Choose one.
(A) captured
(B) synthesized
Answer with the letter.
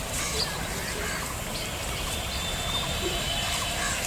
B